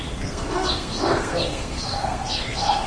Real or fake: fake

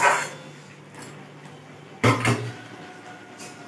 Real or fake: real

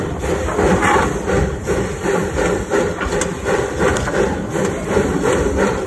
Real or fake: real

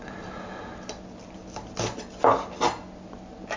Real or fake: real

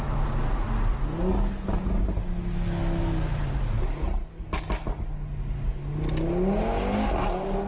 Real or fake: real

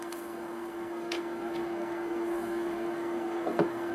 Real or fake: fake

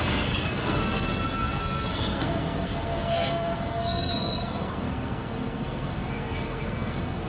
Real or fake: fake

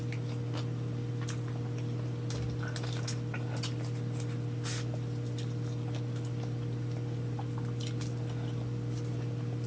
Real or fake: real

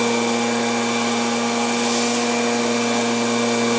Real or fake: real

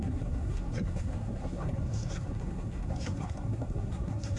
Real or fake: fake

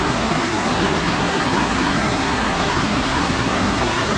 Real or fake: fake